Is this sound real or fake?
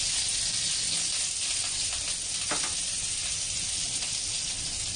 real